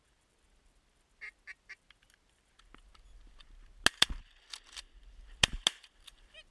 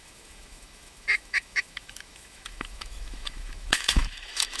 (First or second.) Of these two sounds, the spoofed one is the second